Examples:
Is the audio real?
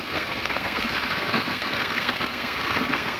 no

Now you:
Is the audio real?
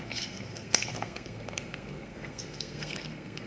no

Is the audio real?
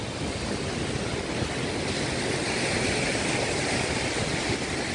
yes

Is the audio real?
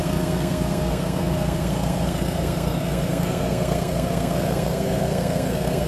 no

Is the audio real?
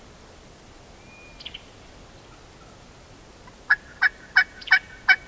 yes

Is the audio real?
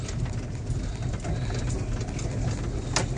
yes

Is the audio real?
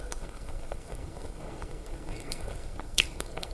no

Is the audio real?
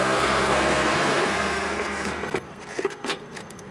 no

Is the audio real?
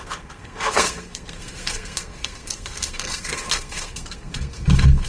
no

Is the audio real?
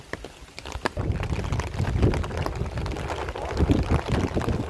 yes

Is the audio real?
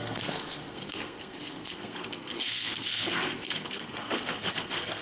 no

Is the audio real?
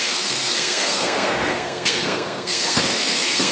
no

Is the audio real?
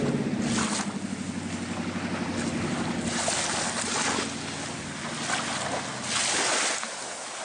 yes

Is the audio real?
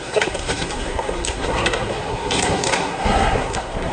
no